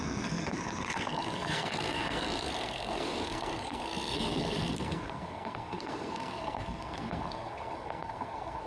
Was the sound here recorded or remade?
remade